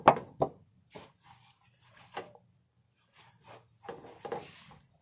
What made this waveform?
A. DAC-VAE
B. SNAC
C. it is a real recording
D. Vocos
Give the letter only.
C